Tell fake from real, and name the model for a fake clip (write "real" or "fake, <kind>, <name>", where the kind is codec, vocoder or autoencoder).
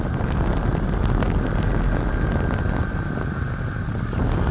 real